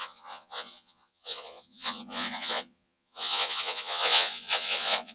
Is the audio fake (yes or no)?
yes